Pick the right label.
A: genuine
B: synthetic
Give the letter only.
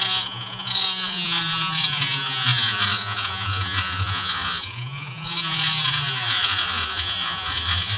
B